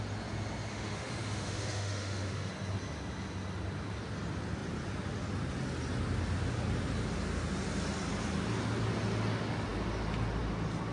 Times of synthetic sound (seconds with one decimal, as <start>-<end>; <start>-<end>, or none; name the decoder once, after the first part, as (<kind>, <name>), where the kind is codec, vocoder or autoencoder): 0.7-2.5 (autoencoder, DAC-VAE)